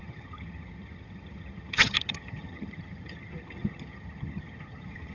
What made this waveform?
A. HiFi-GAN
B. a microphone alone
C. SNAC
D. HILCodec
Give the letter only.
A